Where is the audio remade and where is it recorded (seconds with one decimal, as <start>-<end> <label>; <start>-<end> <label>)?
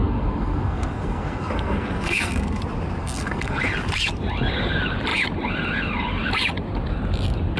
0.0-2.6 remade; 2.6-3.0 recorded; 3.0-3.6 remade; 3.6-7.6 recorded